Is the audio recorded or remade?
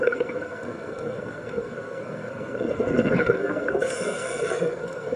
remade